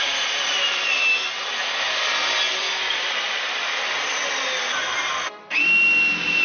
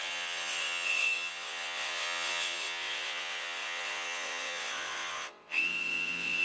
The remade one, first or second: second